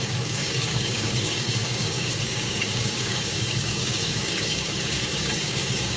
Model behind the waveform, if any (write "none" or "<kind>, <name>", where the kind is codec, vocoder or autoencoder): codec, DAC